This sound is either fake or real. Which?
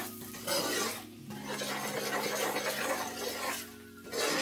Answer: real